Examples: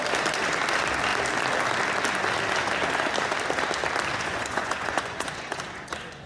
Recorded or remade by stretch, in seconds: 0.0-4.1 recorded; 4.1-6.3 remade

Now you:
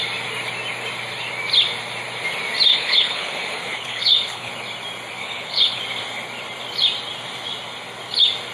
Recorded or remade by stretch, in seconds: 0.0-2.7 recorded; 2.7-4.5 remade; 4.5-5.2 recorded; 5.2-5.8 remade; 5.8-8.5 recorded

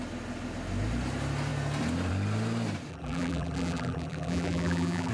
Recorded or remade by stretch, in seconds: 0.0-2.9 recorded; 2.9-5.1 remade

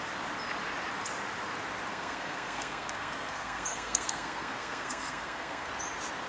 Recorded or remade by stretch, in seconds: 0.0-1.9 recorded; 1.9-5.7 remade; 5.7-6.3 recorded

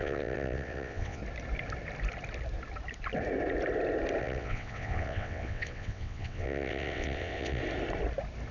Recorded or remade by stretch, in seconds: 0.0-1.2 remade; 1.2-4.2 recorded; 4.2-7.6 remade; 7.6-8.5 recorded

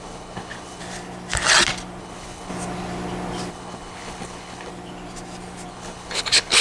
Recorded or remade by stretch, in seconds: 0.0-0.8 remade; 0.8-2.0 recorded; 2.0-2.5 remade; 2.5-3.5 recorded; 3.5-4.7 remade; 4.7-5.7 recorded; 5.7-6.6 remade

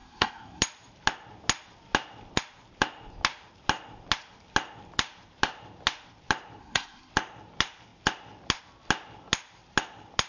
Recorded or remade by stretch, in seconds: 0.0-0.6 remade; 0.6-6.6 recorded; 6.6-7.1 remade; 7.1-10.3 recorded